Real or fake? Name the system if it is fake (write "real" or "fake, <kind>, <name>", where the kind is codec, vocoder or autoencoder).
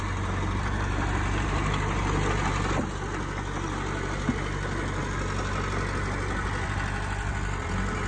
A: real